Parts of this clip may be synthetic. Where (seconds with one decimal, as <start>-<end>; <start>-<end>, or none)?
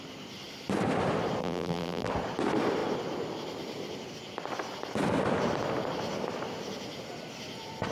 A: 1.4-2.1